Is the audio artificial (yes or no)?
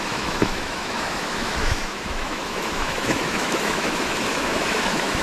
yes